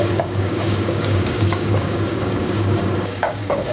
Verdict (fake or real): fake